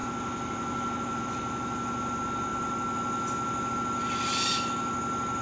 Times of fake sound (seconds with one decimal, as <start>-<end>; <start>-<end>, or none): none

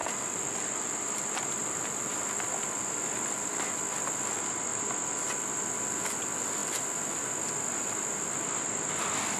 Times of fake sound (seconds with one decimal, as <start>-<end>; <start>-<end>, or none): 0.0-2.1; 6.6-7.2

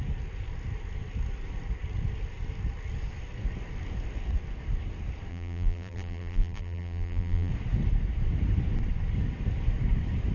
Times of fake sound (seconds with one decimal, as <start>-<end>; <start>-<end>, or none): 5.3-7.5

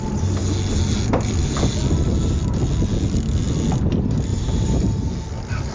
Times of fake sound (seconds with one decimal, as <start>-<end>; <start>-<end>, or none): 4.3-5.1

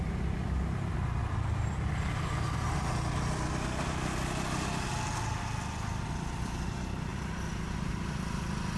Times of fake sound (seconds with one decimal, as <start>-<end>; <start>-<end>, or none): none